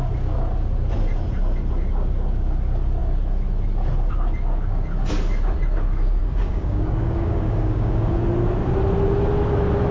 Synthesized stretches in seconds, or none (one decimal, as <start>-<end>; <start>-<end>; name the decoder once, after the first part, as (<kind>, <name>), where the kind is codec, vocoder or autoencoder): 6.2-8.1 (codec, DAC)